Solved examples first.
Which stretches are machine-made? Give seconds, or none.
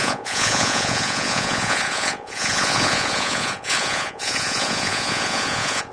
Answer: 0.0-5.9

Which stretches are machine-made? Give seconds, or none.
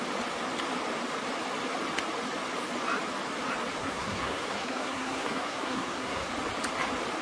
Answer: 3.8-6.3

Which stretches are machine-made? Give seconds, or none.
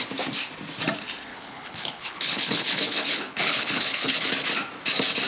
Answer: 1.3-4.3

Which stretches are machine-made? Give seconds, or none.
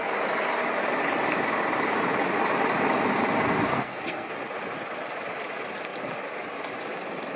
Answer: 3.7-4.3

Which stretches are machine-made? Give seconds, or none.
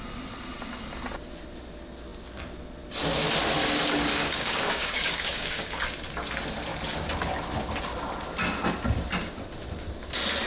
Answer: 4.1-5.9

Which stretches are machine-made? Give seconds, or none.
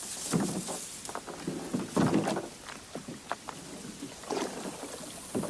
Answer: 3.8-4.4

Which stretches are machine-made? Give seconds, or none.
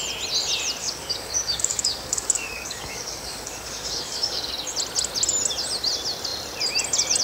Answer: 0.8-4.5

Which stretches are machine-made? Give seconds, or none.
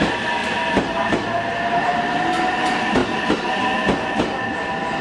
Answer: 0.4-1.5